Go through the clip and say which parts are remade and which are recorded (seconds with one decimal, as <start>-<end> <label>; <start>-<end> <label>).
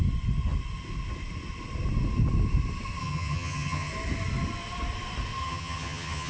0.0-3.0 recorded; 3.0-3.9 remade; 3.9-5.4 recorded; 5.4-6.3 remade